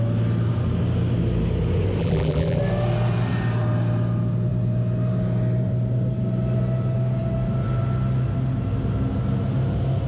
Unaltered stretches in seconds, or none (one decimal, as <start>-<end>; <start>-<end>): 0.0-2.0; 2.6-10.1